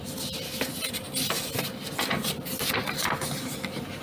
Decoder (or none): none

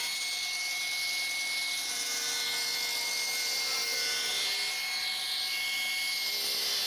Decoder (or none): none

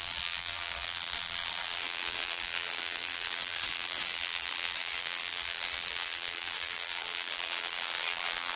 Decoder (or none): vocoder, BigVGAN v2